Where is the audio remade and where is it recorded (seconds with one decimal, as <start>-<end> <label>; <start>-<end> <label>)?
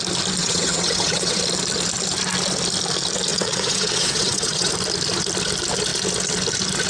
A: 0.0-0.4 recorded; 0.4-1.4 remade; 1.4-3.3 recorded; 3.3-4.7 remade; 4.7-6.9 recorded